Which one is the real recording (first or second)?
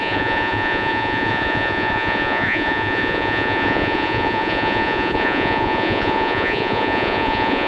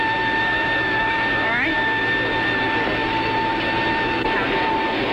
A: second